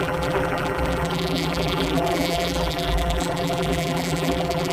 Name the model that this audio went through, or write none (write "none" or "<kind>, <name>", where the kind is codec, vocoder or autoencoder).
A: vocoder, BigVGAN v2